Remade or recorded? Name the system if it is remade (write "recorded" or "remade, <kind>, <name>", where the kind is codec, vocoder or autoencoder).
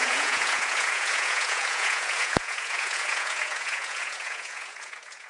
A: remade, vocoder, Vocos